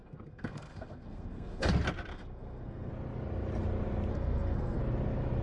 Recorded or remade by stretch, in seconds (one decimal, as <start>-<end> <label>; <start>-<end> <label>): 0.0-1.7 remade; 1.7-2.1 recorded; 2.1-2.9 remade; 2.9-4.1 recorded; 4.1-4.8 remade; 4.8-5.4 recorded